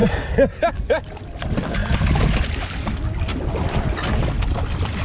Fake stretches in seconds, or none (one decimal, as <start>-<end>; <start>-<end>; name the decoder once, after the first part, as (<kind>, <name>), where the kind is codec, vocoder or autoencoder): 0.7-1.8 (vocoder, BigVGAN v2)

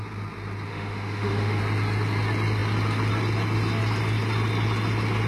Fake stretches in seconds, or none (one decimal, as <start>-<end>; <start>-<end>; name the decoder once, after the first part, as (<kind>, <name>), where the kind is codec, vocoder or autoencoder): 0.7-1.6 (autoencoder, DAC-VAE)

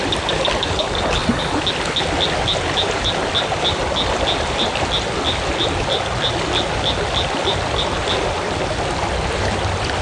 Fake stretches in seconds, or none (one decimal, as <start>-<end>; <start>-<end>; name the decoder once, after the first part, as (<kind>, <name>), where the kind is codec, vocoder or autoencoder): none

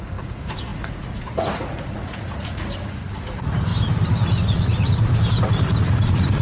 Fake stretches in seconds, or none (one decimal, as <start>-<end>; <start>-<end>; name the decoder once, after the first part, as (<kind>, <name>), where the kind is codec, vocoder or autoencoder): 0.0-3.7 (vocoder, Vocos); 4.4-5.1; 5.8-6.4